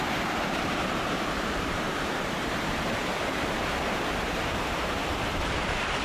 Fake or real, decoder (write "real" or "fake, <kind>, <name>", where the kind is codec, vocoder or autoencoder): fake, vocoder, BigVGAN v2